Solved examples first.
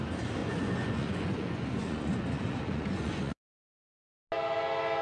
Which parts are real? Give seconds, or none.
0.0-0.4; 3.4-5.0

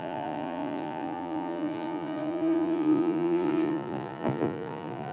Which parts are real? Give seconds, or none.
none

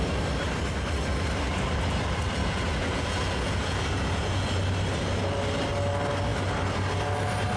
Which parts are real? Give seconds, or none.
0.0-2.4; 4.5-7.6

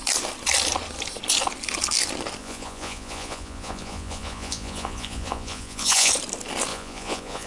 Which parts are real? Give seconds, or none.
0.0-2.4; 6.1-6.7

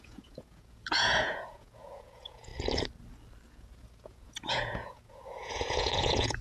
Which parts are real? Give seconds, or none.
2.5-3.5

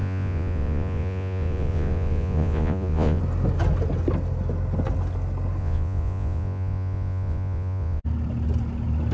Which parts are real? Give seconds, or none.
3.2-5.6; 8.0-9.1

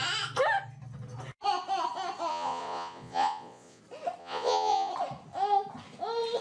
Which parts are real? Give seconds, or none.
0.0-2.3; 3.8-4.2; 4.9-6.4

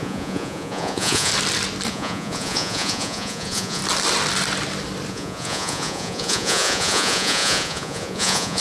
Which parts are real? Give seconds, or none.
1.3-1.9; 3.8-5.1